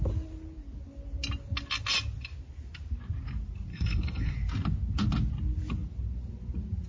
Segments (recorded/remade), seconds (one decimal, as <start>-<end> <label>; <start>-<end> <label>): 0.0-3.7 recorded; 3.7-4.3 remade; 4.3-6.9 recorded